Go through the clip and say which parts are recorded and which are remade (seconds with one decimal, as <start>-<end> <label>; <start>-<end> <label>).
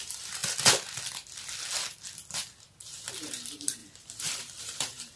0.0-0.4 remade; 0.4-3.1 recorded; 3.1-5.2 remade